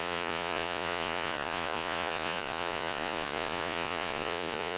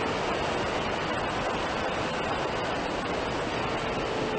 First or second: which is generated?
first